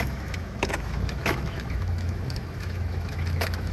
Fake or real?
fake